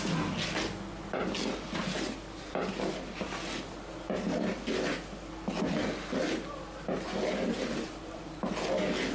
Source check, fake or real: real